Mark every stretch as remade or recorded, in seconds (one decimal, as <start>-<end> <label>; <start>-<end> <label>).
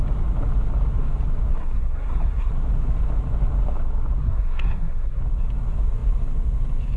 0.0-1.5 recorded; 1.5-2.5 remade; 2.5-4.2 recorded; 4.2-5.2 remade; 5.2-7.0 recorded